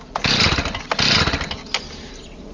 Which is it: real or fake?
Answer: real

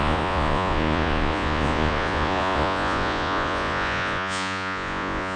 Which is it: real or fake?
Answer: fake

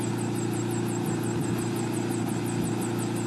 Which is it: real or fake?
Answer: real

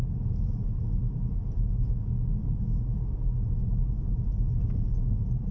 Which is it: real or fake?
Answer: real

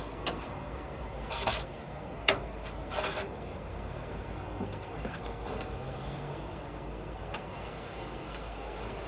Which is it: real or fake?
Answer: fake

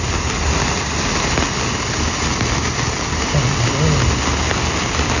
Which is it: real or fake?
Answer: real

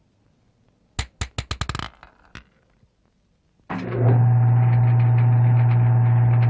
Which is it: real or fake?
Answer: real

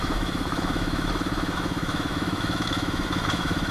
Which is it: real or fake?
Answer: fake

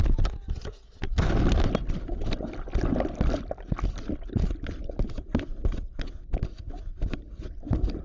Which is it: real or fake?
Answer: real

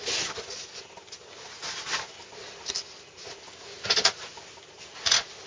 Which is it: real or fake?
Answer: real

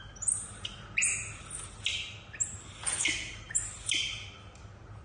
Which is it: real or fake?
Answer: real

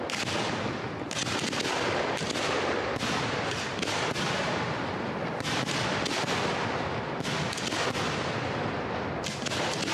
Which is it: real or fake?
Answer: real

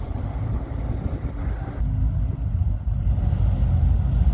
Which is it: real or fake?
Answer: real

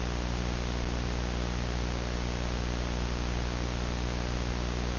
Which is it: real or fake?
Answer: real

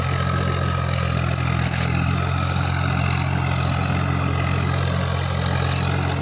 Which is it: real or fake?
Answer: real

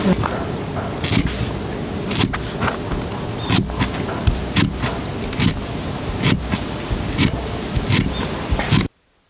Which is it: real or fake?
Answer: real